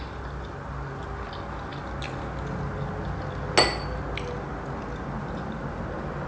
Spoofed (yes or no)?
no